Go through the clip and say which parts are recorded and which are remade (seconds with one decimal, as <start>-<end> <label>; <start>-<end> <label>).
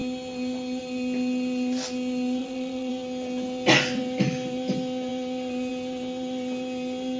0.0-2.4 recorded; 2.4-2.9 remade; 2.9-7.2 recorded